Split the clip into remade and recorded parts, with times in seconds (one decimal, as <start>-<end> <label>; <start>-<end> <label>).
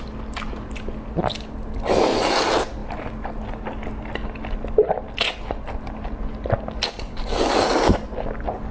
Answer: 0.0-8.7 recorded